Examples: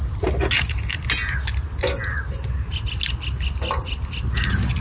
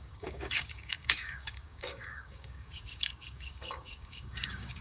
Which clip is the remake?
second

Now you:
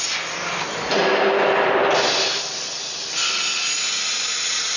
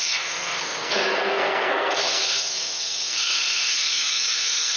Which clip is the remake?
second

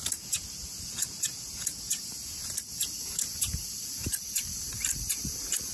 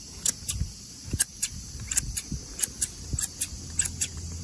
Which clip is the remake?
first